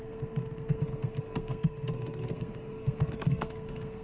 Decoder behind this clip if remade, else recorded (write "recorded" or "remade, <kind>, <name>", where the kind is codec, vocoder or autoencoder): remade, codec, SNAC